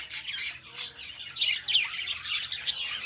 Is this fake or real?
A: real